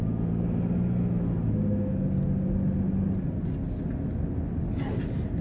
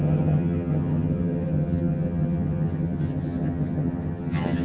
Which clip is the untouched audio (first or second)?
first